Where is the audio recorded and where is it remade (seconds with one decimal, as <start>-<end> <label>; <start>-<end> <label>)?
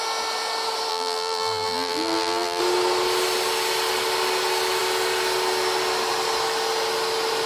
0.0-0.9 recorded; 0.9-2.6 remade; 2.6-7.5 recorded